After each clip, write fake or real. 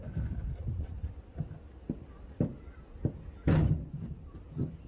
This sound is real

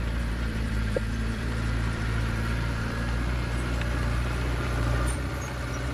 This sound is fake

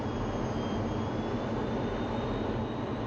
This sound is real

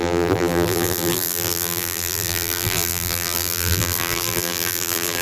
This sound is fake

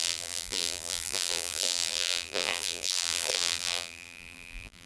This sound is fake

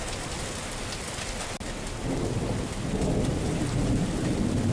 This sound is real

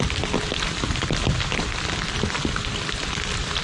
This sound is real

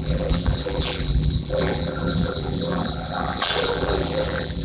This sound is fake